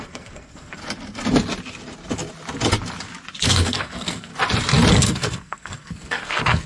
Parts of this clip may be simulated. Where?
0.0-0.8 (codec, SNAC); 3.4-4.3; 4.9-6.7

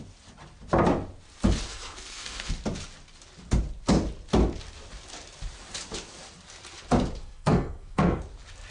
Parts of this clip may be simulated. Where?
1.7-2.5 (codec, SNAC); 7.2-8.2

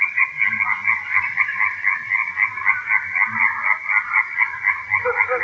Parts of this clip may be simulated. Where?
none

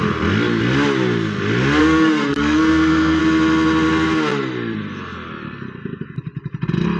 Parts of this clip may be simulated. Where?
1.8-3.2 (codec, SNAC)

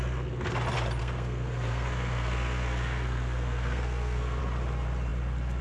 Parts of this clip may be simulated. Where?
1.0-4.4 (codec, SNAC)